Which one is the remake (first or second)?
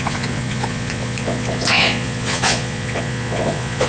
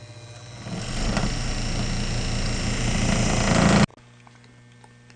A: first